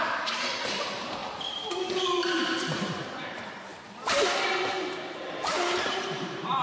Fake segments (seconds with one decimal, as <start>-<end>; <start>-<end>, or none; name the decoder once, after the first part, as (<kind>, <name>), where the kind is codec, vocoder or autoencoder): 0.0-3.7 (vocoder, BigVGAN v2); 5.3-6.6